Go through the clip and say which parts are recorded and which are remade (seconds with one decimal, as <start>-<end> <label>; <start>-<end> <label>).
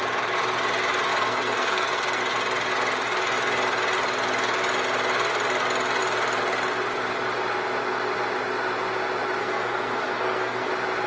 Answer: 0.0-1.1 recorded; 1.1-2.2 remade; 2.2-9.4 recorded; 9.4-10.7 remade; 10.7-11.1 recorded